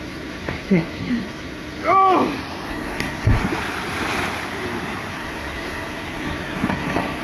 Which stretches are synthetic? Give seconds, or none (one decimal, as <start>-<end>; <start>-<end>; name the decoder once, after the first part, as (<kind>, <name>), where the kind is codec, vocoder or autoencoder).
0.0-1.8 (codec, SNAC); 2.7-3.4; 5.1-7.2

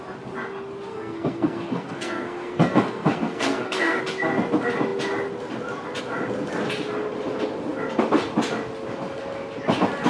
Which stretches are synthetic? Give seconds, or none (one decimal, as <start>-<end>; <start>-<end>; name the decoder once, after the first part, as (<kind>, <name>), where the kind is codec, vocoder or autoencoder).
0.9-4.0 (codec, SNAC)

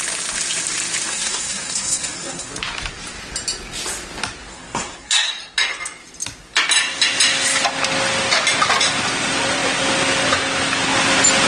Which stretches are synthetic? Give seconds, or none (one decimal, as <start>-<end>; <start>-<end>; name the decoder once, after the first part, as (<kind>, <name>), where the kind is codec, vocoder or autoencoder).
1.1-2.5 (codec, SNAC); 4.5-5.3

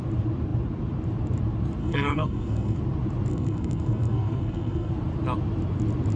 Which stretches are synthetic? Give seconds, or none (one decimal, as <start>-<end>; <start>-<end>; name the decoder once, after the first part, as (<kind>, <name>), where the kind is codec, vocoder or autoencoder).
1.8-2.8 (codec, SNAC); 3.3-4.9

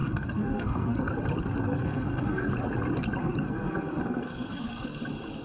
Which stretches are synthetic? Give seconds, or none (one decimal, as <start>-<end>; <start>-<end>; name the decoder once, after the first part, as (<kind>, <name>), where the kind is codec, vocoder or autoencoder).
0.0-1.1 (codec, SNAC); 1.6-2.5; 3.2-5.0

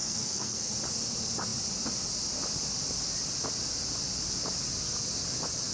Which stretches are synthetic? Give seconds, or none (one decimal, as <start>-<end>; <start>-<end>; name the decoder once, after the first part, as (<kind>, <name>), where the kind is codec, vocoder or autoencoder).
0.0-0.7 (codec, SNAC)

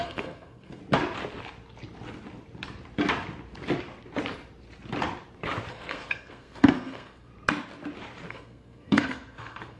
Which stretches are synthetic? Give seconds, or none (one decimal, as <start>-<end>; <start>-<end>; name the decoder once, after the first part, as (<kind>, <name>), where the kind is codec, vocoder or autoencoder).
0.0-0.8 (codec, SNAC); 5.7-7.3; 8.3-9.8